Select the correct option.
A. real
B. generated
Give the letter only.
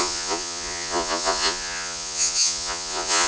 B